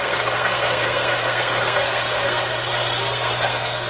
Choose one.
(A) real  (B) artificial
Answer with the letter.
B